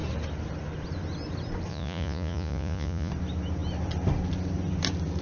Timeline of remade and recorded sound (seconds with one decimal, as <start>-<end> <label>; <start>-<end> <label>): 0.0-1.7 recorded; 1.7-3.1 remade; 3.1-5.2 recorded